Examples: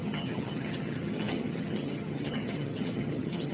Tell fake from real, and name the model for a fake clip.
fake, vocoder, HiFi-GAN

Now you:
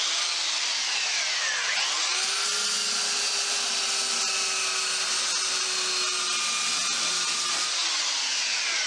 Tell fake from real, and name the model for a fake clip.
real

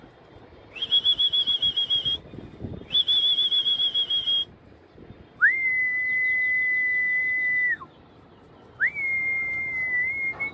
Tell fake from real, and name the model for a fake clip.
real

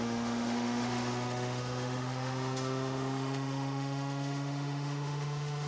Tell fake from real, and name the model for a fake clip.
fake, autoencoder, DAC-VAE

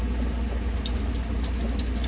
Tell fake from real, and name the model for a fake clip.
real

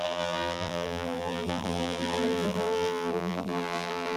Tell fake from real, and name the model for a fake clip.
fake, vocoder, BigVGAN v2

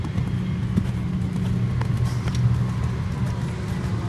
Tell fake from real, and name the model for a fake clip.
real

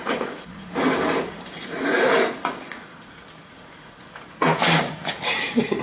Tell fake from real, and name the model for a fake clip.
fake, vocoder, Vocos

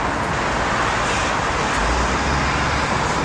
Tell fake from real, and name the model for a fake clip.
real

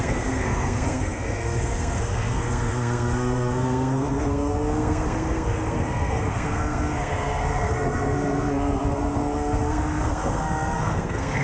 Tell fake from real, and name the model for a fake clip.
fake, codec, SNAC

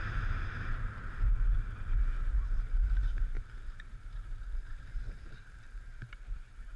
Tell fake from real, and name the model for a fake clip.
fake, vocoder, BigVGAN v2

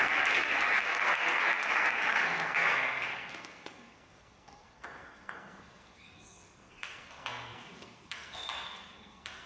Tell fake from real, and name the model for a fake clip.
fake, codec, SNAC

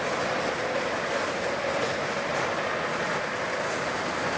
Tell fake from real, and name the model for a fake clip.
real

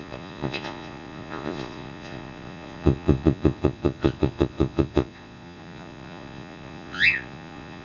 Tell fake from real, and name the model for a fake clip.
fake, vocoder, Vocos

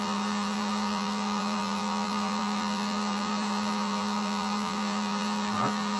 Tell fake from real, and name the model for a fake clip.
fake, vocoder, BigVGAN v2